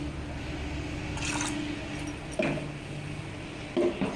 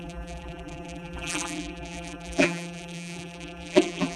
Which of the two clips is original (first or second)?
first